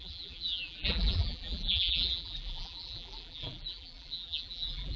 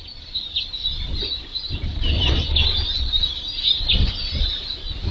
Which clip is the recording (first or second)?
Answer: second